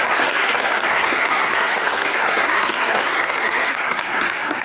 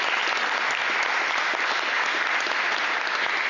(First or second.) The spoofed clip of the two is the first